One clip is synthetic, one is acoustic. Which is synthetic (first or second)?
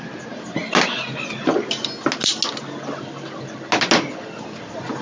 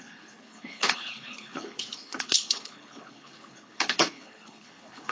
second